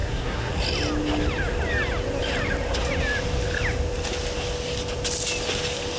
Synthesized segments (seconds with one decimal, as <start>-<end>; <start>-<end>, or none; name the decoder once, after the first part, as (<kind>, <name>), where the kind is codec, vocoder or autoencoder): 0.0-0.5 (codec, SNAC)